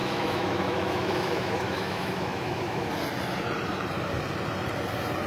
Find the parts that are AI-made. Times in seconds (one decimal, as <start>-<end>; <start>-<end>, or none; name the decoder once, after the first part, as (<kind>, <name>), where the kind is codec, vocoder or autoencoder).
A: 0.0-2.9 (autoencoder, DAC-VAE)